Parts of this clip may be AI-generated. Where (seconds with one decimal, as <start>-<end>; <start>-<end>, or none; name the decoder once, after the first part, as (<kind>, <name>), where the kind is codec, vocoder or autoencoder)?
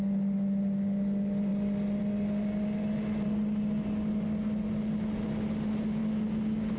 none